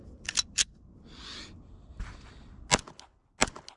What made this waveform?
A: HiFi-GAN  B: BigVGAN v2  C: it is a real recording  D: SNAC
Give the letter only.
C